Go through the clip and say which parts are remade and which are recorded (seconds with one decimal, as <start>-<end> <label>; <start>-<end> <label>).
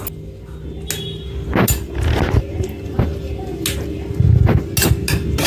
0.0-5.5 recorded